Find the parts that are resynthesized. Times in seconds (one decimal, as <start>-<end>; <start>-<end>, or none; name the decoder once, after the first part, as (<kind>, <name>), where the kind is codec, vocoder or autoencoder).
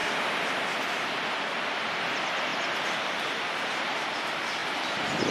0.0-2.5 (vocoder, BigVGAN v2); 3.5-5.3